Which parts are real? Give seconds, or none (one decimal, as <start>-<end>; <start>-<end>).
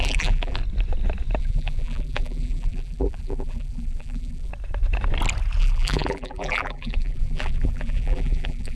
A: 0.6-1.4; 4.5-5.6